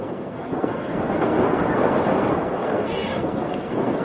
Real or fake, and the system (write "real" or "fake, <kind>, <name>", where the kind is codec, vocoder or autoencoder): fake, codec, SNAC